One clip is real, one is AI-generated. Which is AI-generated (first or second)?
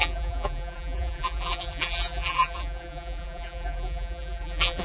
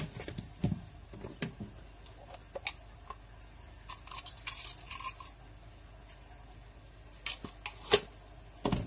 first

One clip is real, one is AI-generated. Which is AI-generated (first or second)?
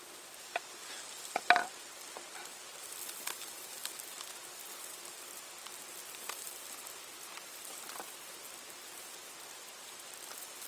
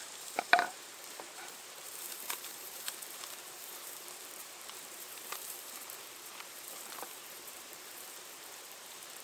second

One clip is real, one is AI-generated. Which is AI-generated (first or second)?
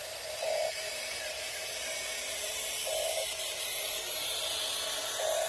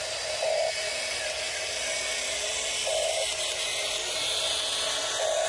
first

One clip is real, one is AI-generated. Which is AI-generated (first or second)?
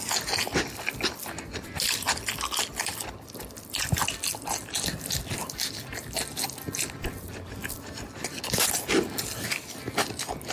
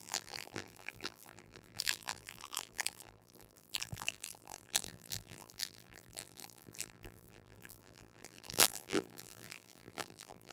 second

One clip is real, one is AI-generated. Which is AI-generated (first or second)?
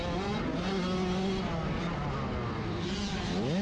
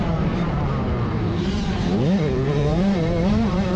second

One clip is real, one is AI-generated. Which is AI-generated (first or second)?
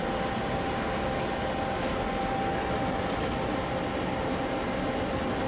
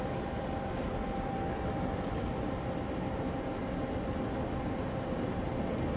second